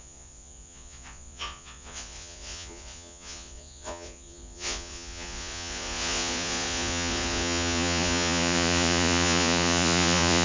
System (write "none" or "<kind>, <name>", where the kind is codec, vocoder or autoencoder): vocoder, Vocos